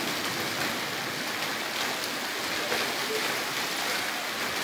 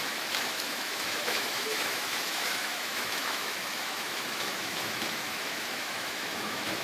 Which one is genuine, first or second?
first